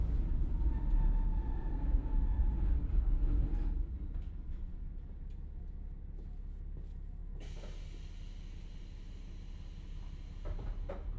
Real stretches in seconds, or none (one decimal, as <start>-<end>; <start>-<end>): 0.0-1.4; 2.4-11.2